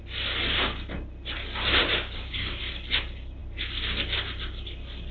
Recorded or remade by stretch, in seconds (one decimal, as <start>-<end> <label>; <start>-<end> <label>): 0.0-1.8 recorded; 1.8-2.6 remade; 2.6-5.1 recorded